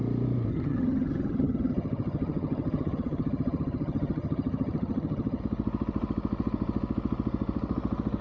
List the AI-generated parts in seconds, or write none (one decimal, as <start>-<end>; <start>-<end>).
0.5-5.4